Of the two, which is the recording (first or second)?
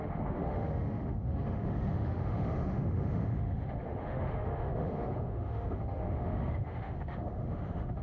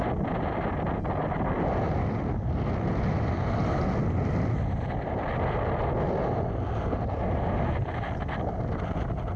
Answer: second